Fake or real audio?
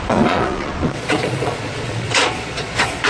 fake